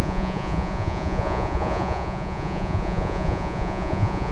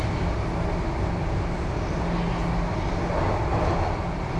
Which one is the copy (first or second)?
first